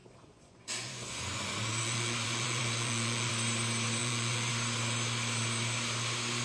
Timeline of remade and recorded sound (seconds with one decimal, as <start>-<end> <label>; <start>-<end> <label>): 0.0-3.3 remade; 3.3-4.0 recorded; 4.0-4.5 remade; 4.5-6.4 recorded